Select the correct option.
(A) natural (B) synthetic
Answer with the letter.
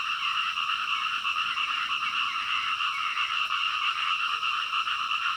B